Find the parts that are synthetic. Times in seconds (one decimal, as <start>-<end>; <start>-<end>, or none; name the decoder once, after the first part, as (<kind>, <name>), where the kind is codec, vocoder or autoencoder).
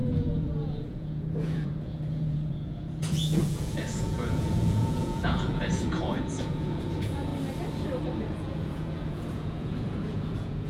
0.0-7.3 (vocoder, Vocos); 8.2-10.7